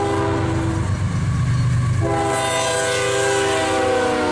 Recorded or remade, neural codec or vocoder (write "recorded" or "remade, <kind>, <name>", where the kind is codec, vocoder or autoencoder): recorded